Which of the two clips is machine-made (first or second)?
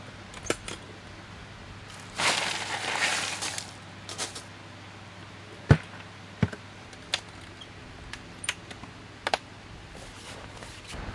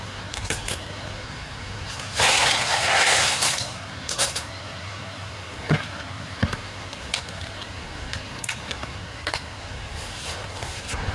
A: second